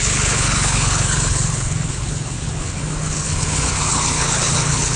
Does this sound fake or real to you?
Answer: fake